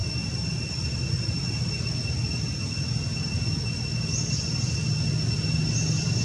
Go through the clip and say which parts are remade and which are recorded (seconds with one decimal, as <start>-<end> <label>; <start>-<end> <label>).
0.0-6.2 recorded